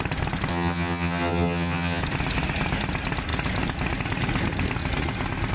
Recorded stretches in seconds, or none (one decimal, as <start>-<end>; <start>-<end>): 0.0-0.5; 2.0-5.5